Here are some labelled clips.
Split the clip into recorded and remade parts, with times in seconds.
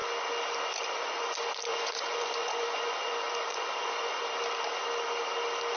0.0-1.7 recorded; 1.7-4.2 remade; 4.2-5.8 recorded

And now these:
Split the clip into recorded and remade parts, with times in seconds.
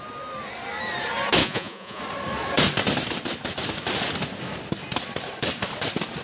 0.0-1.4 recorded; 1.4-2.0 remade; 2.0-6.2 recorded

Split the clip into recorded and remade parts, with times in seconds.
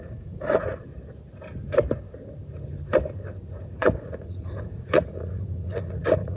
0.0-0.9 remade; 0.9-3.8 recorded; 3.8-6.4 remade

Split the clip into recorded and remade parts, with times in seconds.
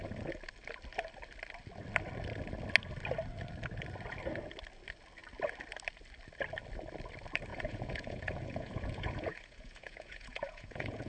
0.0-7.5 recorded; 7.5-11.1 remade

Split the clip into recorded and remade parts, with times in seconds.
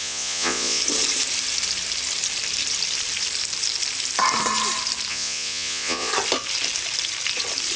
0.0-0.8 remade; 0.8-5.1 recorded; 5.1-6.1 remade; 6.1-7.8 recorded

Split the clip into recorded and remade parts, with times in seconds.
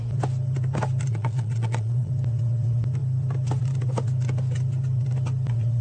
0.0-1.1 recorded; 1.1-2.1 remade; 2.1-5.8 recorded